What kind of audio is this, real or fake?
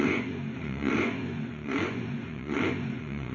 fake